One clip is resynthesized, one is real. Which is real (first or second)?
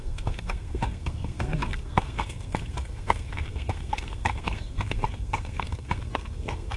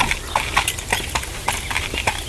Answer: second